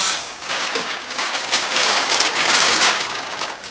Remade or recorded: remade